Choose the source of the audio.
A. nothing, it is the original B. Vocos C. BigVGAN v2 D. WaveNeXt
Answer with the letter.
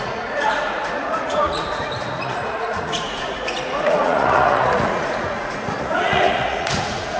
B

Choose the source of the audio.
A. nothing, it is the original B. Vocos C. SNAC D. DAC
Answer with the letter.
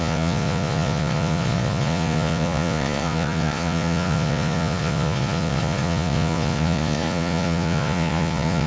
B